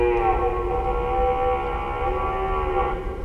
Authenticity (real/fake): real